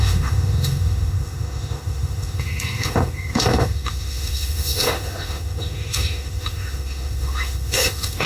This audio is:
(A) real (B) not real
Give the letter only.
B